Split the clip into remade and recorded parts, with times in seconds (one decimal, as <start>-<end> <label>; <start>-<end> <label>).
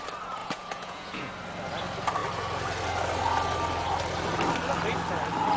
0.0-0.4 recorded; 0.4-1.3 remade; 1.3-5.6 recorded